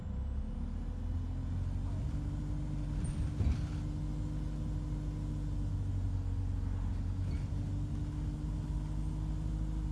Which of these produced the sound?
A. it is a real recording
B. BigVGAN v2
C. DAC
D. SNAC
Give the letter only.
A